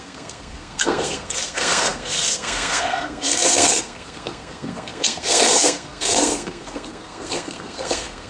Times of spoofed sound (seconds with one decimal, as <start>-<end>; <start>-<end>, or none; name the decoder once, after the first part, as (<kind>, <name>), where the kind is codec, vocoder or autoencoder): 0.0-8.3 (codec, SNAC)